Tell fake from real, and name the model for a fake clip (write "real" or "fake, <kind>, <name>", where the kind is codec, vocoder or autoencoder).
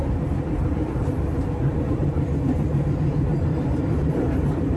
fake, vocoder, BigVGAN v2